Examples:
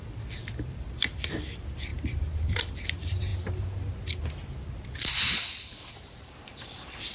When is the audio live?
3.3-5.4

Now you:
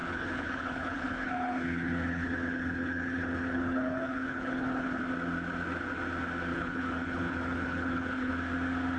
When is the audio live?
5.0-6.5; 8.3-9.0

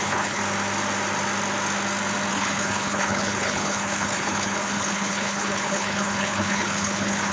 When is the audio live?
0.4-2.3

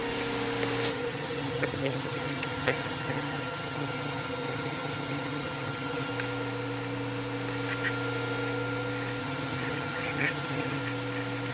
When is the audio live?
0.0-0.9; 6.1-9.2; 10.8-11.5

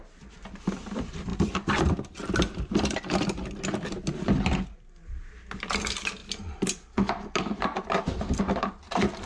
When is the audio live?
0.0-9.3

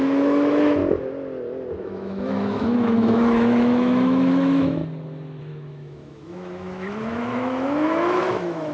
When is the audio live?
0.8-1.8; 4.8-5.4

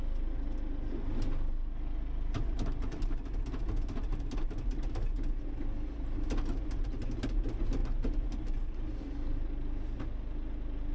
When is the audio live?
0.0-10.9